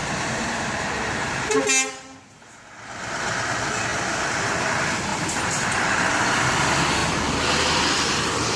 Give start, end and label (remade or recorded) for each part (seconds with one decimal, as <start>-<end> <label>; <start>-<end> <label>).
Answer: 0.0-1.6 remade; 1.6-8.6 recorded